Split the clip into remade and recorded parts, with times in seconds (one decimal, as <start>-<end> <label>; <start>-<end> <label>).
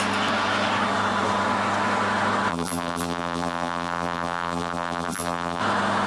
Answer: 0.0-2.5 recorded; 2.5-5.6 remade; 5.6-6.1 recorded